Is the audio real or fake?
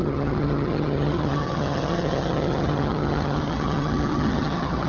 fake